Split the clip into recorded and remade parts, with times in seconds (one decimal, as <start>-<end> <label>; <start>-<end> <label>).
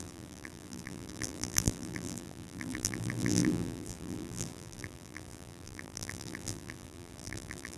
0.0-7.8 remade